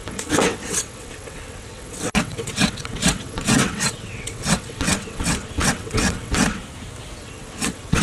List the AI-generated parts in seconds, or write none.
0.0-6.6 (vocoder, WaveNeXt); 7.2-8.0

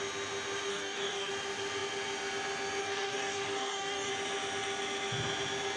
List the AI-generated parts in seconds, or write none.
0.7-1.3 (codec, DAC); 2.8-4.1

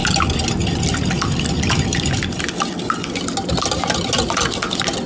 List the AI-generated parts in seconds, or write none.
none

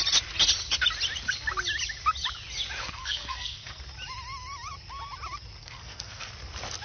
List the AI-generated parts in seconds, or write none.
2.8-3.8 (codec, SNAC); 5.6-6.3

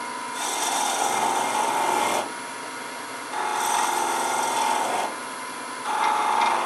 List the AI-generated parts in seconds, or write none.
none